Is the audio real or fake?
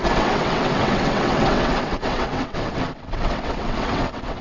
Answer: fake